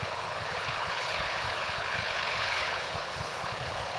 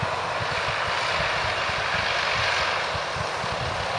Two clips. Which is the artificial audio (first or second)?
first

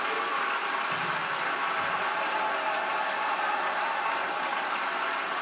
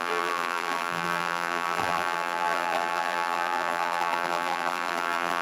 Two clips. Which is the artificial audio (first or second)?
second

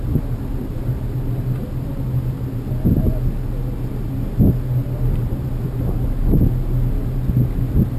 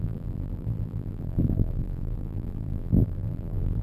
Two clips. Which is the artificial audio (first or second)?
second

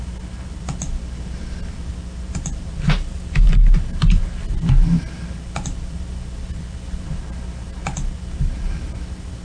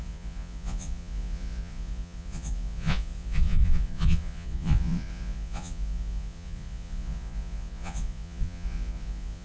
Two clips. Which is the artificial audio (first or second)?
second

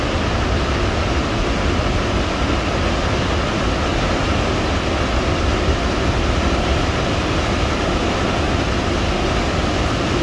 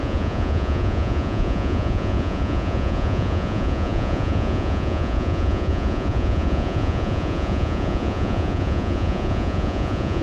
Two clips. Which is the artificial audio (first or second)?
second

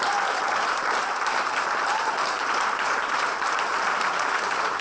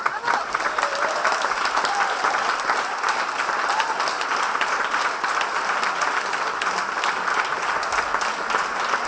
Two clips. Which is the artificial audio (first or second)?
first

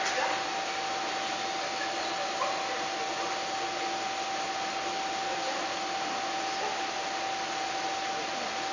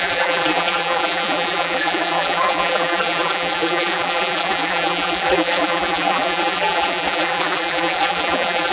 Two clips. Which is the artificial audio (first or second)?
second